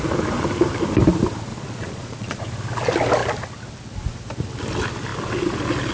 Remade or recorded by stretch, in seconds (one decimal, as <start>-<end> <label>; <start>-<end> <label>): 0.0-1.5 recorded; 1.5-2.4 remade; 2.4-5.9 recorded